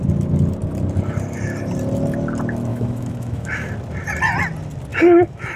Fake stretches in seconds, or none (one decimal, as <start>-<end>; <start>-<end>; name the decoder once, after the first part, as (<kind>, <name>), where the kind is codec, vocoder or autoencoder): 2.7-3.7 (autoencoder, DAC-VAE); 4.9-5.6